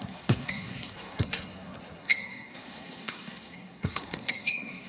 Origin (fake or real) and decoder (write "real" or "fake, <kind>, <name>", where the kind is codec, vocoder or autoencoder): fake, codec, SNAC